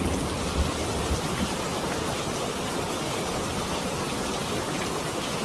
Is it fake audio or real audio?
real